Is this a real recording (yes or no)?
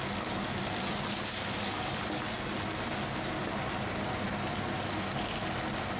yes